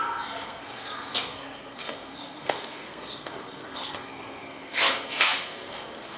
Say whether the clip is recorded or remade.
remade